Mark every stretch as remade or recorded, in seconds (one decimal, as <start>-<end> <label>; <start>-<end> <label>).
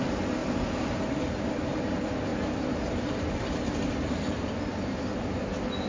0.0-5.9 recorded